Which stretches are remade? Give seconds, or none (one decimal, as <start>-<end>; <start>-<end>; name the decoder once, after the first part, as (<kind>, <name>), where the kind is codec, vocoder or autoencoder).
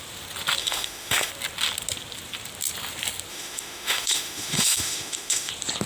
0.6-1.3 (autoencoder, DAC-VAE); 3.3-5.5